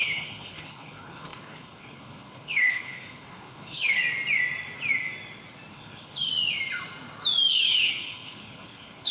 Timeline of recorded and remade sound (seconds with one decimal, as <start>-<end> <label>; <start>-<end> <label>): 0.0-4.0 remade; 4.0-5.7 recorded; 5.7-6.3 remade; 6.3-7.5 recorded; 7.5-9.1 remade